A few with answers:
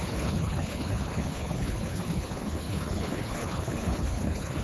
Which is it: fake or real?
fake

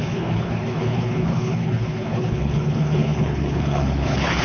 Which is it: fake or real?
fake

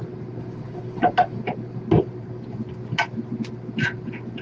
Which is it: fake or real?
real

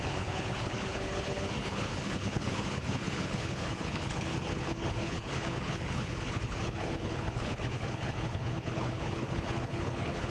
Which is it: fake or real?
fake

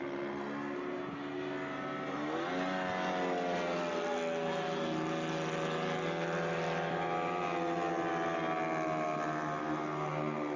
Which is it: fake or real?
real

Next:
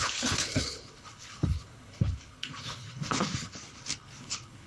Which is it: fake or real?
fake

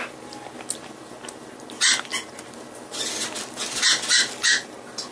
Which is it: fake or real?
real